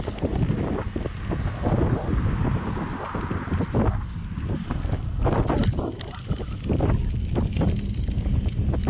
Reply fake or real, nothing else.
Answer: real